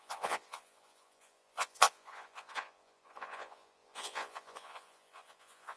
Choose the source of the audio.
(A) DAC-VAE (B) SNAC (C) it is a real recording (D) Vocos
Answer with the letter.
D